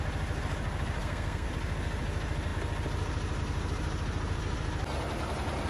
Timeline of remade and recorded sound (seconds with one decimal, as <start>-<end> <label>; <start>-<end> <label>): 0.0-1.0 recorded; 1.0-1.5 remade; 1.5-5.7 recorded